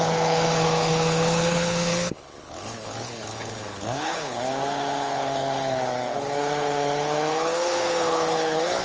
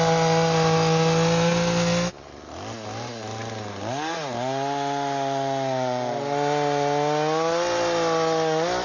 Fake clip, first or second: first